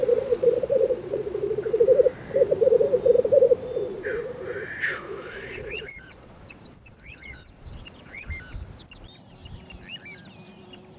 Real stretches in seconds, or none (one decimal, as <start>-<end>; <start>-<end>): 1.8-4.9; 8.3-11.0

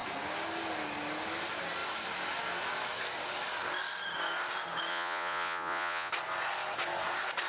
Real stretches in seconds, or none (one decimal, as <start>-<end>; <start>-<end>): 0.0-4.9; 6.1-7.5